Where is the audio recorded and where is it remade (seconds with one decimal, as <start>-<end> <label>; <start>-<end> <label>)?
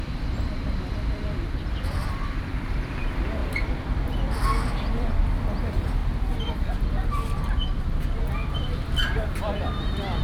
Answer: 0.0-6.0 remade; 6.0-8.5 recorded; 8.5-10.2 remade